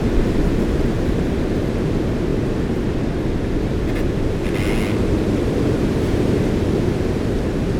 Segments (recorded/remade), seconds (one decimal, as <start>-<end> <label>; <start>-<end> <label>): 0.0-7.8 recorded

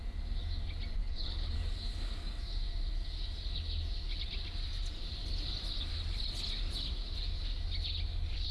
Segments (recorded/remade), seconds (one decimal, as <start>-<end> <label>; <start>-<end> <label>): 0.0-1.0 recorded; 1.0-1.5 remade; 1.5-8.5 recorded

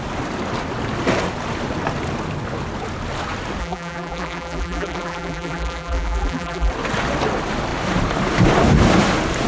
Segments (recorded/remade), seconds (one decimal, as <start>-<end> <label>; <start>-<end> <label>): 0.0-3.6 recorded; 3.6-6.7 remade; 6.7-9.5 recorded